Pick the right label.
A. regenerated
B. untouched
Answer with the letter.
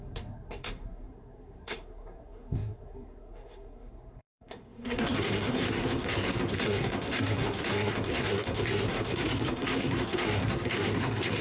A